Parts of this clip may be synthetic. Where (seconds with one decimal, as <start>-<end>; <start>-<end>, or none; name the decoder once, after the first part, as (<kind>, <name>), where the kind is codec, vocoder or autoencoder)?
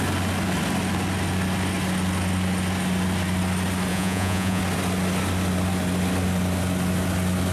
3.9-4.6 (vocoder, Vocos)